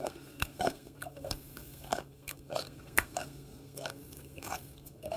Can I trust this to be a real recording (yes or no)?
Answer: no